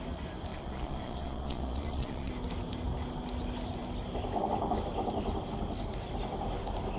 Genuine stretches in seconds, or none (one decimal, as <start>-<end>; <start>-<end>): 0.0-0.5; 2.3-7.0